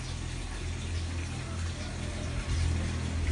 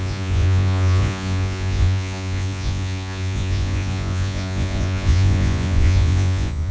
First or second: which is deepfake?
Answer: second